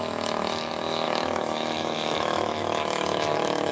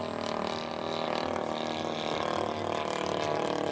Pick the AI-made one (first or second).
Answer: first